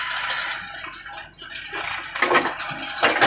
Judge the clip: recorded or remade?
recorded